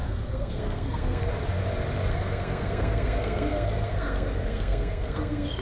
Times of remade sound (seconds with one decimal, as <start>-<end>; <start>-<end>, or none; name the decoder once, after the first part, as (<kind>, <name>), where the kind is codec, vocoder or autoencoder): 0.0-1.3 (codec, SNAC); 2.1-5.6